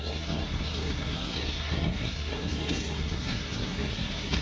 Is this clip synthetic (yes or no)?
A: yes